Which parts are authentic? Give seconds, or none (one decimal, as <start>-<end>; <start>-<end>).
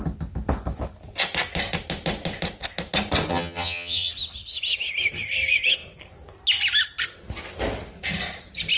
0.0-3.3; 4.1-8.8